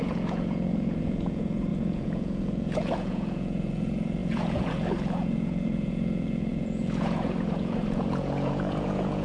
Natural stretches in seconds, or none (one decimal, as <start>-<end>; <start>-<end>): none

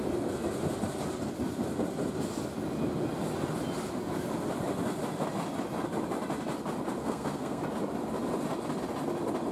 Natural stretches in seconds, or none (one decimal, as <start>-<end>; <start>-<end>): 0.0-7.0; 7.6-9.5

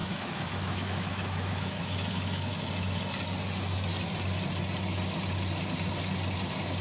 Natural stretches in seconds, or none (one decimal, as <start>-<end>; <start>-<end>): 2.5-6.8

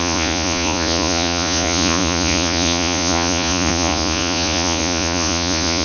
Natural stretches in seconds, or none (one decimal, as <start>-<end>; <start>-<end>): none

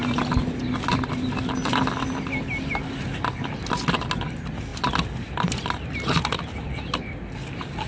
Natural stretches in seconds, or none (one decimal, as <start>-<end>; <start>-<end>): 0.0-7.9

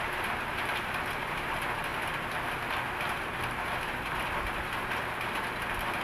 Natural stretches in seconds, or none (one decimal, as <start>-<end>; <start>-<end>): 0.0-6.0